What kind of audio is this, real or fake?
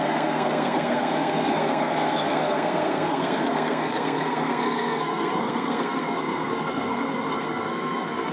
fake